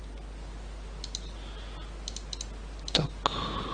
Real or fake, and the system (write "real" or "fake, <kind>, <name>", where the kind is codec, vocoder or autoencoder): real